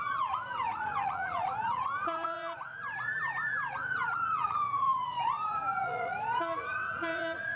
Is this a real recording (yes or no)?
no